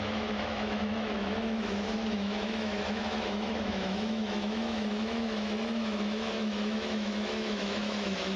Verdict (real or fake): fake